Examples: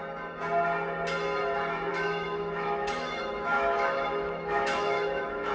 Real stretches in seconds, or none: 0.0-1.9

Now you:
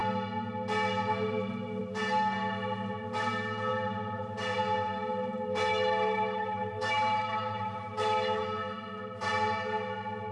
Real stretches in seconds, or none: 0.0-5.7; 8.4-10.3

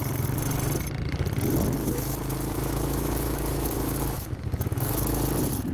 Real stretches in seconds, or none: 0.0-1.8; 5.2-5.7

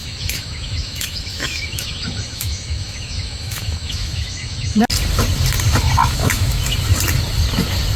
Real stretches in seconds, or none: 4.8-6.0; 6.6-8.0

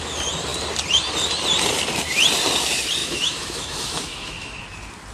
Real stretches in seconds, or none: 0.0-3.0; 4.6-5.1

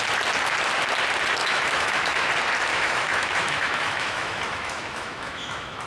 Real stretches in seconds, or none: 0.0-1.4; 2.3-2.7

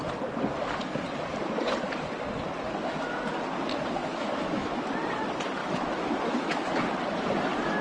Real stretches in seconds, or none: 0.0-4.0; 4.8-5.6; 6.7-7.8

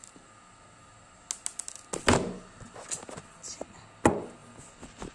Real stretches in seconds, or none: 0.0-5.1